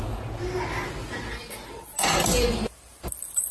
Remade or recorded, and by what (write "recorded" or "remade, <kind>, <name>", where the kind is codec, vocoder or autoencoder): recorded